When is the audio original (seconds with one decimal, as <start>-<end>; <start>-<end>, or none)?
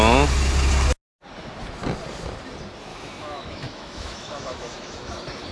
0.0-2.9; 5.1-5.5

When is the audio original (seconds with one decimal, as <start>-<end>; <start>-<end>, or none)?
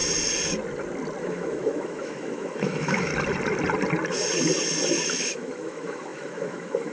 0.0-1.2; 3.1-5.1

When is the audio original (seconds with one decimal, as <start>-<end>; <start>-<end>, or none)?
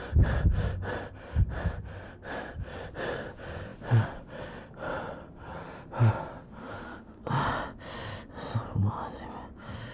0.0-6.6; 7.2-9.9